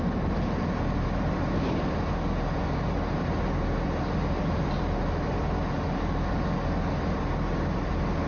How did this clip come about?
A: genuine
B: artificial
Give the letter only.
A